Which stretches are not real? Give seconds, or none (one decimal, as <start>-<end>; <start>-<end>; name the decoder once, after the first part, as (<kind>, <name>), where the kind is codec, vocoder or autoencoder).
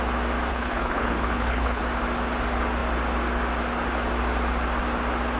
0.5-1.8 (codec, HILCodec)